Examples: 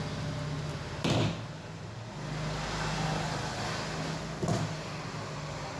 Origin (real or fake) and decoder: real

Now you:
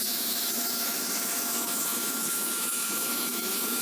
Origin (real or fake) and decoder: fake, autoencoder, DAC-VAE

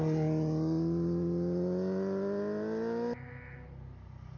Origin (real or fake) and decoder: real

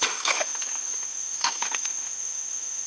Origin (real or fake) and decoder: fake, autoencoder, DAC-VAE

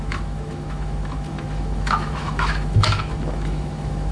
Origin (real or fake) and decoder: fake, autoencoder, DAC-VAE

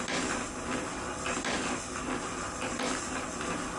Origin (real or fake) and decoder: real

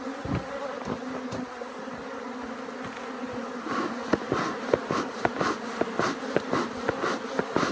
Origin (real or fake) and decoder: real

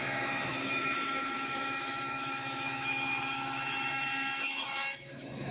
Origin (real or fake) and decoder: fake, autoencoder, DAC-VAE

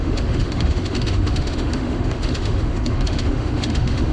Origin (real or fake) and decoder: fake, autoencoder, DAC-VAE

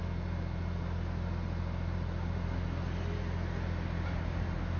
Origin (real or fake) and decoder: real